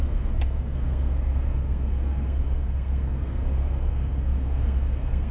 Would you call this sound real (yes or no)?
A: no